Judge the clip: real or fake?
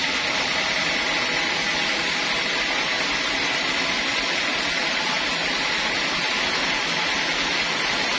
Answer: real